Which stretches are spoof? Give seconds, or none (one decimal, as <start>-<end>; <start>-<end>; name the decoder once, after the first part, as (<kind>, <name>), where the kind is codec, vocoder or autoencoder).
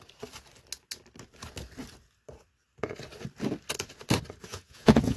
4.5-5.2 (vocoder, Vocos)